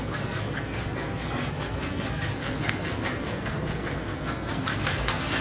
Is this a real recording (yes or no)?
no